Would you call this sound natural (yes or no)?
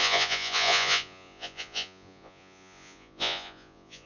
no